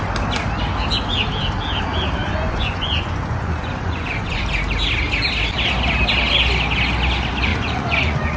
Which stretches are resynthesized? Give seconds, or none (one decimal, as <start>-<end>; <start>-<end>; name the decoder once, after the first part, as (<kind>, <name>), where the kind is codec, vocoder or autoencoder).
2.2-4.4 (vocoder, Vocos); 7.5-8.4